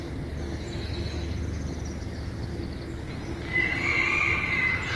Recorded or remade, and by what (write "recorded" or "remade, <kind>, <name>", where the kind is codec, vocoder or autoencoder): recorded